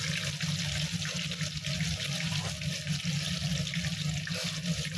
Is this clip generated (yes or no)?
no